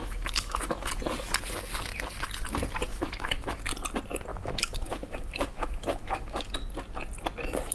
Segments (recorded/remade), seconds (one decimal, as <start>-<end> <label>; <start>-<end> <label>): 0.0-0.9 remade; 0.9-2.9 recorded; 2.9-3.6 remade; 3.6-4.3 recorded; 4.3-6.5 remade; 6.5-7.7 recorded